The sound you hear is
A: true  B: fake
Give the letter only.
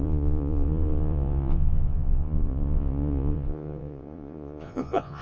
B